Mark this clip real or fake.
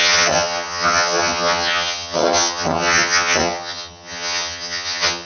fake